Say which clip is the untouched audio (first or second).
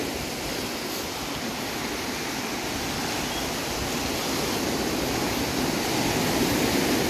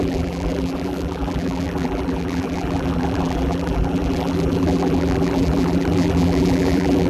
first